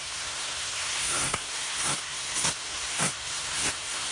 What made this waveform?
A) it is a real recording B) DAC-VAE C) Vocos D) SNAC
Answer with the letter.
D